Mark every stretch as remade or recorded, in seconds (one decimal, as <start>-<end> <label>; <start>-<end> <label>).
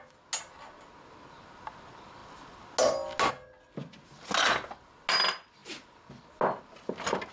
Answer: 0.0-7.3 recorded